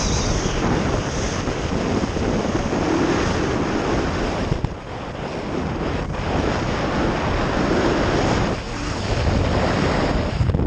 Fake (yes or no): no